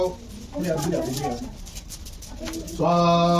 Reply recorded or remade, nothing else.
recorded